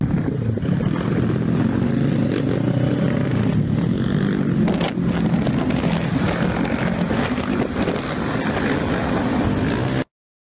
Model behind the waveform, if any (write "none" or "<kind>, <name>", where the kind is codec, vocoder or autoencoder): none